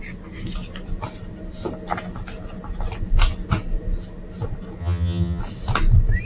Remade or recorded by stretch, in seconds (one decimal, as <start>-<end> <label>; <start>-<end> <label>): 0.0-4.8 recorded; 4.8-5.4 remade; 5.4-6.2 recorded